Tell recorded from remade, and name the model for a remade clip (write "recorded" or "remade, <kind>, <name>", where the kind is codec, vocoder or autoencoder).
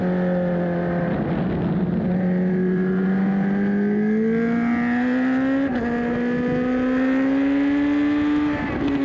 recorded